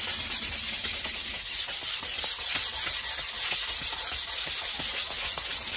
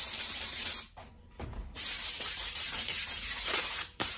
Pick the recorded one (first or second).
first